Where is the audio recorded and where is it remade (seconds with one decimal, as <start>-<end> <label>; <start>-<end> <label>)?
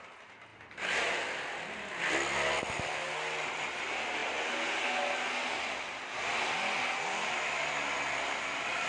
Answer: 0.0-8.9 recorded